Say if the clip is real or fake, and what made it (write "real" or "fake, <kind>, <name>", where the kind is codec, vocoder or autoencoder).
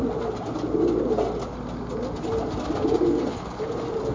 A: real